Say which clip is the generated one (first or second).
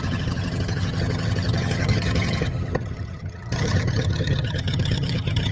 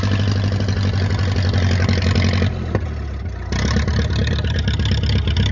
first